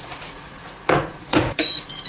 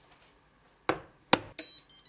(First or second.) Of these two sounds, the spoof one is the first